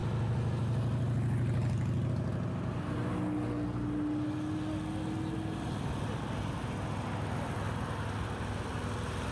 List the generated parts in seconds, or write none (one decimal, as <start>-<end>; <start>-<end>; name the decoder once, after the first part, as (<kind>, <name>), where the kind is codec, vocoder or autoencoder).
none